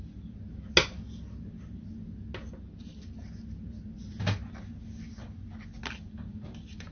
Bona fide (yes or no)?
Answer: yes